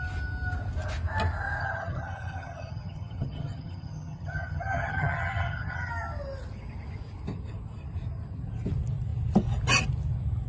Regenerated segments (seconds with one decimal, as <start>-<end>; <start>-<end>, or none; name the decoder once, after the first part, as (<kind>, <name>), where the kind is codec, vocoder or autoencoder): 1.6-5.9 (vocoder, HiFi-GAN)